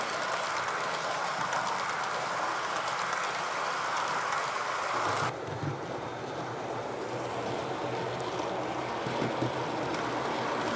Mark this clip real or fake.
real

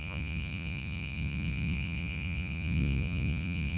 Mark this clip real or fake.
fake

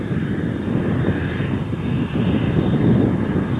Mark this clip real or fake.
real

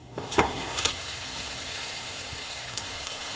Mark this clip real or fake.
fake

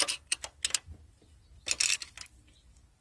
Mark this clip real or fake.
real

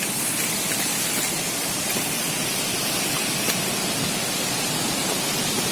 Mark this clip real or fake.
real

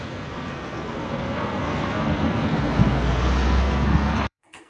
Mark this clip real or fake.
fake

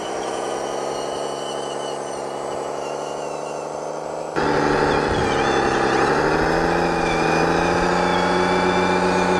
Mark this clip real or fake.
real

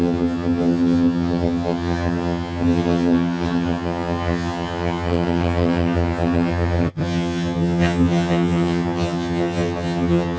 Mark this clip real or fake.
fake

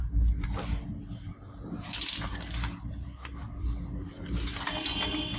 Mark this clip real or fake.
real